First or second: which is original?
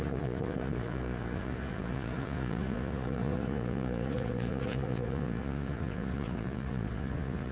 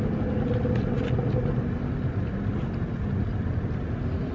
second